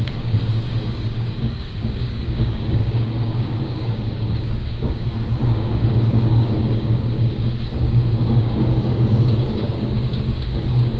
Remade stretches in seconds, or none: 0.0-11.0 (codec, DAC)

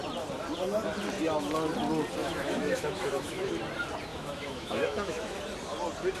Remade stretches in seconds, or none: 2.2-3.5 (autoencoder, DAC-VAE); 4.1-5.4

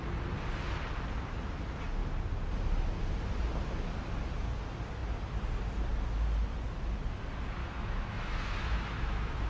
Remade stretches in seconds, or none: 7.6-9.5 (autoencoder, DAC-VAE)

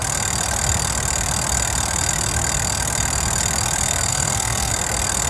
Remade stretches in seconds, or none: 4.1-4.7 (codec, SNAC)

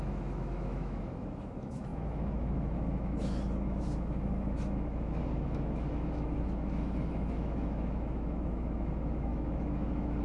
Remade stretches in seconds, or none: 0.0-10.2 (autoencoder, DAC-VAE)

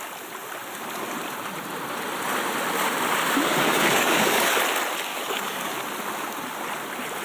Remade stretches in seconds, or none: 3.5-4.6 (codec, DAC); 5.1-5.7

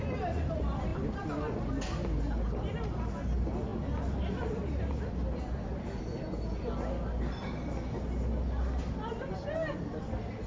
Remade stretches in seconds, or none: none